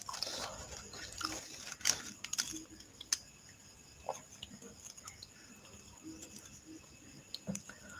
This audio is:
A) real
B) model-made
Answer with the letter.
A